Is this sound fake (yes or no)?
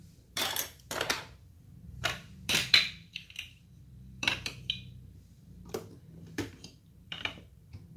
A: yes